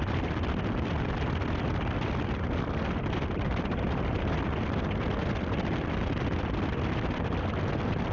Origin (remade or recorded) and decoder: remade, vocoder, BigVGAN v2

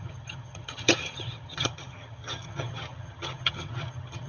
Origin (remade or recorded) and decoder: remade, vocoder, HiFi-GAN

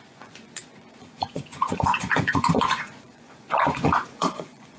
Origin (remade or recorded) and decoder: remade, vocoder, Vocos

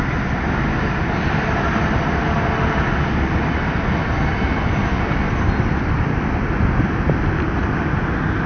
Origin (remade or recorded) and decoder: recorded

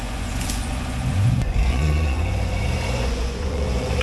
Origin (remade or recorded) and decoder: remade, vocoder, Vocos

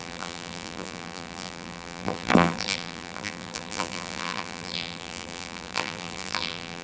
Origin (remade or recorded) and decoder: remade, vocoder, BigVGAN v2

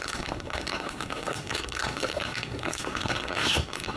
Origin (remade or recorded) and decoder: remade, codec, SNAC